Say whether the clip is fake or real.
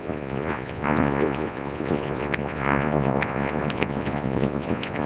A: fake